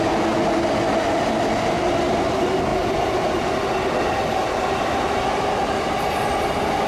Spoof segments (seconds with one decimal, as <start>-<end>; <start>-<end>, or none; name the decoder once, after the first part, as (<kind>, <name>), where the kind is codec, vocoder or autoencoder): none